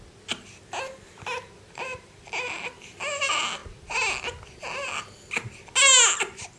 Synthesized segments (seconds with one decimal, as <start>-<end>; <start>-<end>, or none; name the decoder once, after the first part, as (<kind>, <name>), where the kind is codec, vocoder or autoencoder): none